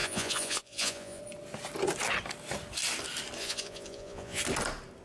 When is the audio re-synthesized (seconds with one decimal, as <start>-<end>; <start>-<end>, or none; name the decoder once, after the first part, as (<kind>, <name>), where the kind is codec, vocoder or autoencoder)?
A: 0.0-1.2 (vocoder, Vocos); 3.4-4.4